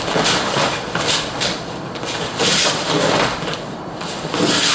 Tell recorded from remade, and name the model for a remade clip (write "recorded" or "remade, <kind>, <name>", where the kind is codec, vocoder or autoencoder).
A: recorded